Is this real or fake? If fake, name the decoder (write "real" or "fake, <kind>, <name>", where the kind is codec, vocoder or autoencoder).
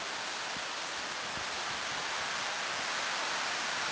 real